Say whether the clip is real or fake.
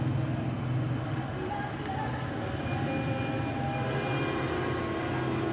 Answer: real